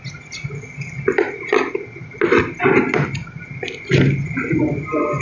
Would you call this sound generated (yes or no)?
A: no